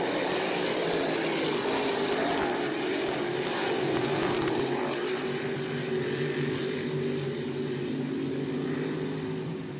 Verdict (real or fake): real